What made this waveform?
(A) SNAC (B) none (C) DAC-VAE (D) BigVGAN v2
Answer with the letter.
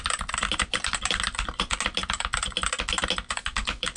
B